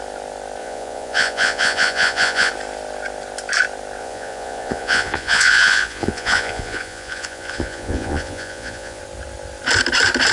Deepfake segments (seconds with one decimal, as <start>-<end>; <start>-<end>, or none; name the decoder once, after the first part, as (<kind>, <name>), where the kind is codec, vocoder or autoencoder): 0.6-2.5 (vocoder, Vocos); 4.0-9.0